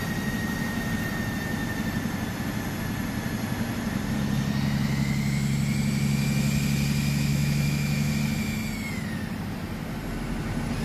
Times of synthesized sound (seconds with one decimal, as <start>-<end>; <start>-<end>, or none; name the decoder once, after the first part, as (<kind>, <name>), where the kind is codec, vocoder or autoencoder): 7.3-8.1 (autoencoder, DAC-VAE)